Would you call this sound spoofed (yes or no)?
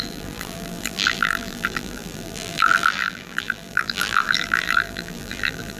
yes